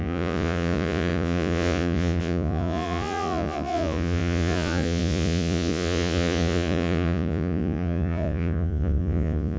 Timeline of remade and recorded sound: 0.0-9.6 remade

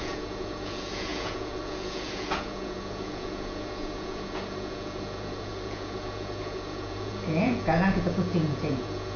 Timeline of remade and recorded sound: 0.0-9.2 remade

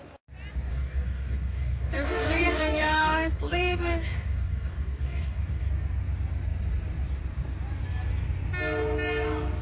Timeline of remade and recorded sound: 0.0-0.7 recorded; 0.7-5.7 remade; 5.7-9.6 recorded

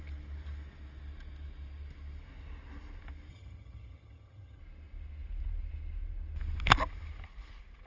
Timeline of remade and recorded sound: 0.0-3.3 recorded; 3.3-4.6 remade; 4.6-7.9 recorded

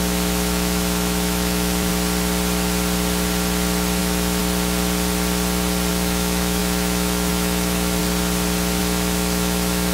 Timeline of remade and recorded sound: 0.0-1.9 remade; 1.9-4.0 recorded; 4.0-4.4 remade; 4.4-5.9 recorded; 5.9-8.0 remade; 8.0-8.8 recorded; 8.8-9.9 remade

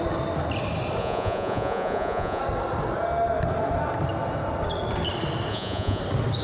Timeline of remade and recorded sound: 0.0-1.0 recorded; 1.0-2.4 remade; 2.4-5.5 recorded; 5.5-6.0 remade; 6.0-6.4 recorded

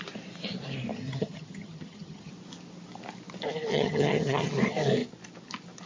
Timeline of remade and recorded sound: 0.0-0.9 recorded; 0.9-2.3 remade; 2.3-3.7 recorded; 3.7-4.5 remade; 4.5-5.9 recorded

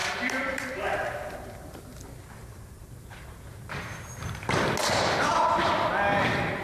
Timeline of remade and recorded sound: 0.0-1.8 remade; 1.8-2.4 recorded; 2.4-4.0 remade; 4.0-4.8 recorded; 4.8-5.9 remade; 5.9-6.6 recorded